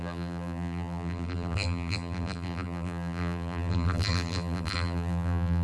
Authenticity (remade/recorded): remade